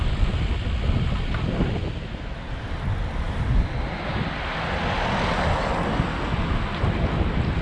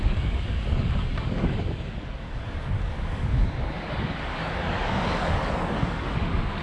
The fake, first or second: second